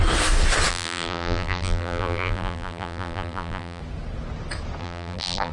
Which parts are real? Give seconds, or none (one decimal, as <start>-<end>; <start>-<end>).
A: 0.0-0.7; 3.8-4.8